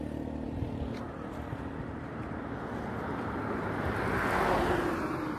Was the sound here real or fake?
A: real